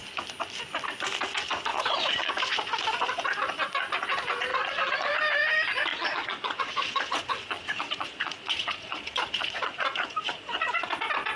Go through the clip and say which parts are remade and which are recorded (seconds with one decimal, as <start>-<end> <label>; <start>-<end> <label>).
0.0-1.7 recorded; 1.7-2.3 remade; 2.3-4.5 recorded; 4.5-5.1 remade; 5.1-5.9 recorded; 5.9-10.9 remade; 10.9-11.4 recorded